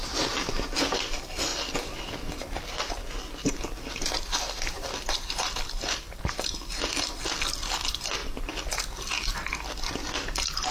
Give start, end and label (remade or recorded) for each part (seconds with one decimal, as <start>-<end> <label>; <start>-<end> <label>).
0.0-10.7 recorded